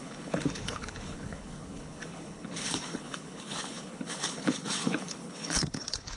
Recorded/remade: remade